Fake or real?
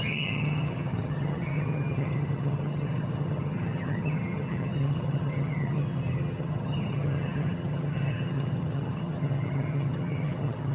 fake